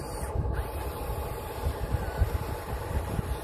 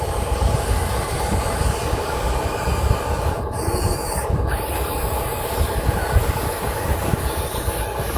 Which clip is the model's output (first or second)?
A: second